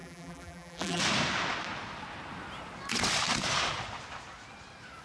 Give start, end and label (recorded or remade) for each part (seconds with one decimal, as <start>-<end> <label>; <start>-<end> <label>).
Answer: 0.0-1.0 remade; 1.0-5.0 recorded